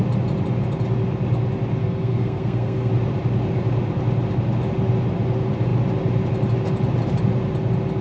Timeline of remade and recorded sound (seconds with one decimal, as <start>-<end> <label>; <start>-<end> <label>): 0.0-1.8 recorded; 1.8-2.9 remade; 2.9-8.0 recorded